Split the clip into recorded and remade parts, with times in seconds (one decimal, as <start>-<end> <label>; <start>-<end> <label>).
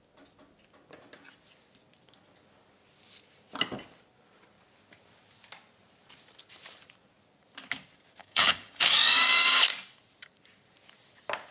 0.0-8.2 recorded; 8.2-9.6 remade; 9.6-11.5 recorded